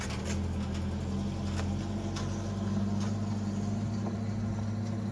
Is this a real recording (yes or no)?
yes